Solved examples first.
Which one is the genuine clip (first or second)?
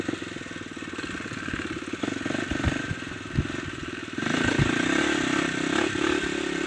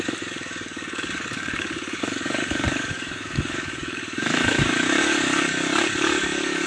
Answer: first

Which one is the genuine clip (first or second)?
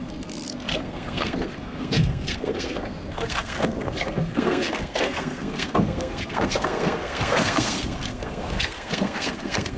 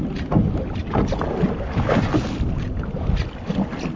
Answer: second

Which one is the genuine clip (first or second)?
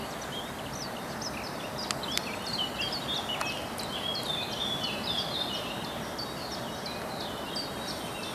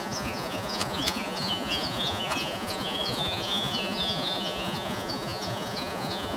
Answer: first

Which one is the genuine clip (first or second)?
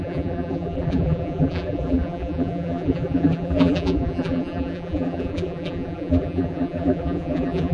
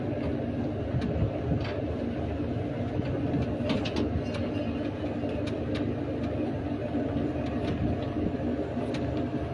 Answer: second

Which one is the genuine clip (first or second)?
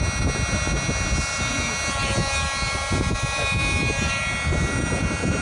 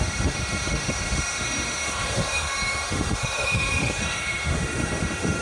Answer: first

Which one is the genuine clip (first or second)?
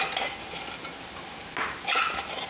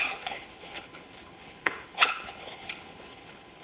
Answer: first